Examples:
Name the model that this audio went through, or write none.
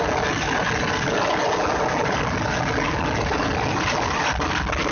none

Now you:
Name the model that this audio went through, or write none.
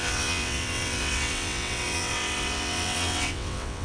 vocoder, WaveNeXt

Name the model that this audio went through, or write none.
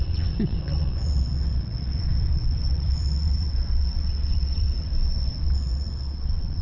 vocoder, WaveNeXt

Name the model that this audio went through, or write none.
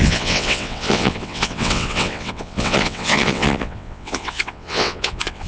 vocoder, WaveNeXt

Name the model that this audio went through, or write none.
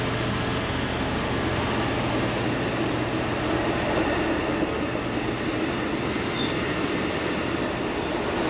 none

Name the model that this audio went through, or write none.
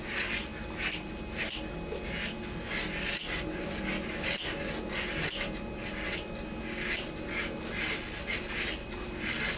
none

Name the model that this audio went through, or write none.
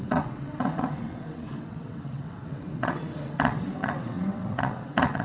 vocoder, WaveNeXt